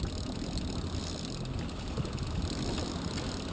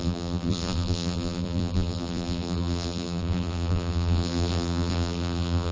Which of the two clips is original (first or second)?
first